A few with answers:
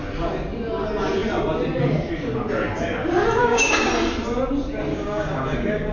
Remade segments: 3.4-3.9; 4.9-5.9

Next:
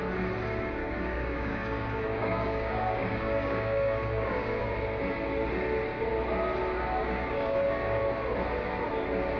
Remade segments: 0.8-4.6; 7.0-8.0